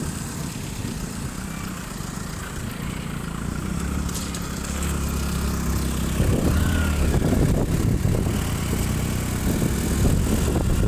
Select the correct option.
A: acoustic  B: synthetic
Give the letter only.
A